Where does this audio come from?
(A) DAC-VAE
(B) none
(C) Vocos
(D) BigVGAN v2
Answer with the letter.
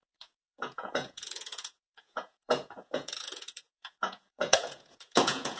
C